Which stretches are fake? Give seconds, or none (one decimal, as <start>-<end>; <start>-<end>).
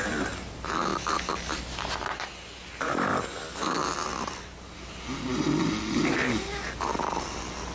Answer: none